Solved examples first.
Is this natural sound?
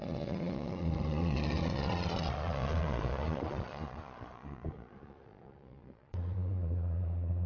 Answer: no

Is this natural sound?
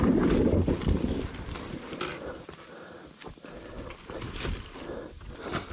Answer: yes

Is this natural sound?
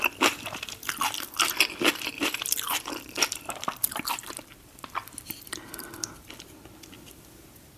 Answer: no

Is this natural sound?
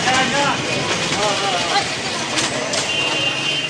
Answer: yes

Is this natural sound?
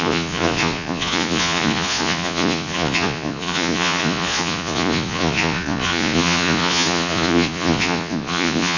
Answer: no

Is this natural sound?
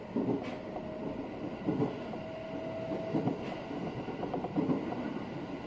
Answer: yes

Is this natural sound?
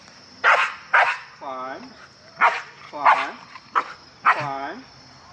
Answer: yes